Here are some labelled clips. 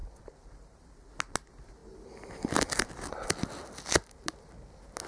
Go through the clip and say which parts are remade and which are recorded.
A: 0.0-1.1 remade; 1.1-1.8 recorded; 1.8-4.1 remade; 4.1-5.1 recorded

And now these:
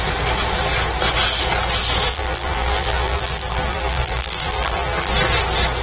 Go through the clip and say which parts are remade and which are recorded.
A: 0.0-2.1 recorded; 2.1-5.1 remade; 5.1-5.8 recorded

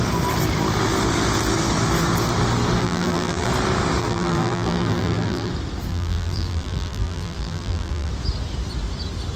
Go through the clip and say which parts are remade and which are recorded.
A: 0.0-2.8 recorded; 2.8-3.5 remade; 3.5-4.0 recorded; 4.0-5.5 remade; 5.5-5.9 recorded; 5.9-8.1 remade; 8.1-9.4 recorded

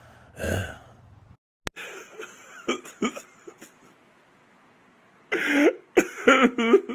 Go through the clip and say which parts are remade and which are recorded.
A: 0.0-6.9 recorded